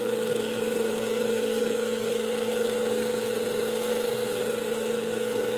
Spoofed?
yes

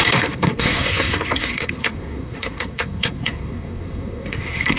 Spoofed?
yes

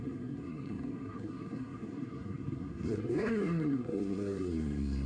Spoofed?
yes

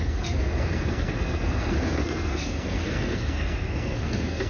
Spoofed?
yes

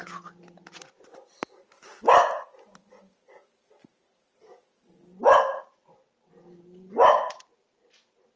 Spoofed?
no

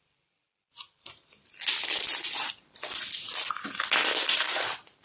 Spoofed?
no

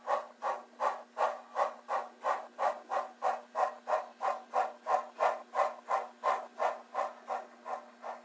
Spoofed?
no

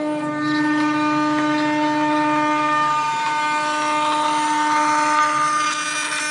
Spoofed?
no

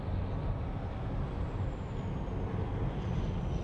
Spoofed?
no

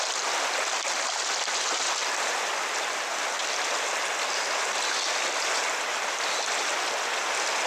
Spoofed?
no